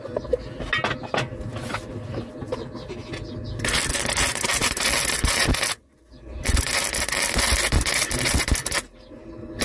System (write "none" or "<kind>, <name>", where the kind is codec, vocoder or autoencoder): none